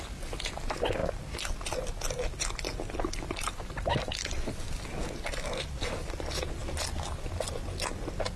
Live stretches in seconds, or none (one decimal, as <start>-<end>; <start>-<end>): 0.0-8.4